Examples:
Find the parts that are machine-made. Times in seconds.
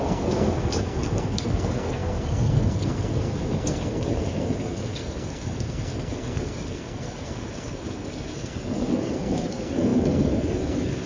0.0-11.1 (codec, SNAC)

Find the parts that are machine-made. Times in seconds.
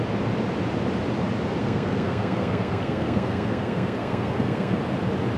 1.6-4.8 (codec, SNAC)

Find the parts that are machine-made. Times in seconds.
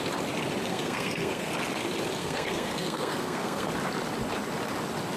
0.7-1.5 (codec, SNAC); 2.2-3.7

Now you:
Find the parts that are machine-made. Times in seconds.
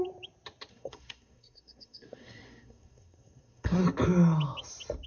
0.7-3.8 (codec, SNAC)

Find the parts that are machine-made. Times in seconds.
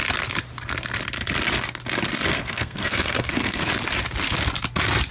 2.3-3.7 (codec, SNAC)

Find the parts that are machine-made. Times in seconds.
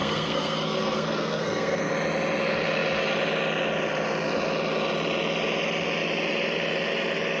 0.0-1.9 (codec, SNAC)